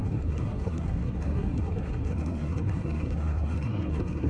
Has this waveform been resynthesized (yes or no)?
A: yes